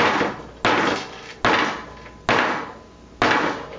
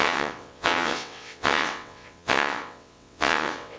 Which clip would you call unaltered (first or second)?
first